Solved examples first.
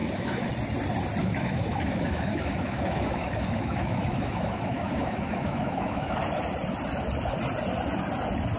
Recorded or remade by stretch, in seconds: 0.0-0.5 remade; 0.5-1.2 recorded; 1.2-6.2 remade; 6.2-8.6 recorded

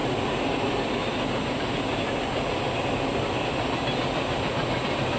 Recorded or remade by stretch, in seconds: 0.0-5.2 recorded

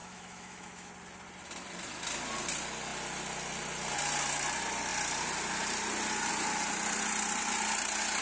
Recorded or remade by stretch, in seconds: 0.0-0.9 remade; 0.9-8.2 recorded